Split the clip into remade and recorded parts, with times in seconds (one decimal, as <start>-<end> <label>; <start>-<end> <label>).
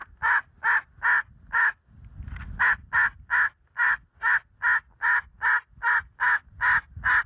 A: 0.0-7.3 recorded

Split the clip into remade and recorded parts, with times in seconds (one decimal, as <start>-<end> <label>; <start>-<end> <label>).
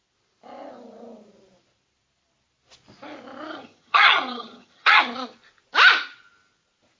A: 0.0-3.5 recorded; 3.5-5.0 remade; 5.0-7.0 recorded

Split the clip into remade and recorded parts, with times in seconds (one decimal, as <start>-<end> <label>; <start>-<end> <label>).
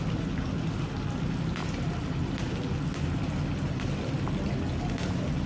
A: 0.0-5.5 recorded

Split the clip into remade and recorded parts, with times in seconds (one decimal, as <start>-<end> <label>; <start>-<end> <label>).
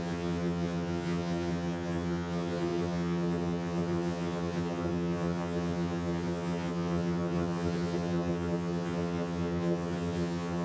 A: 0.0-10.6 remade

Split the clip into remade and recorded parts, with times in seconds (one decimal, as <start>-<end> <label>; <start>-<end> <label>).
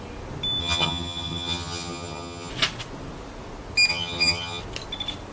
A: 0.0-0.6 recorded; 0.6-2.5 remade; 2.5-3.9 recorded; 3.9-4.6 remade; 4.6-5.3 recorded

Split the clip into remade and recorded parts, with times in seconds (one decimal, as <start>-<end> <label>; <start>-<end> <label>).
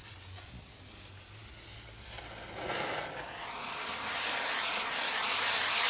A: 0.0-5.9 recorded